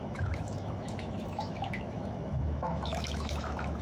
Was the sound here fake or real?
fake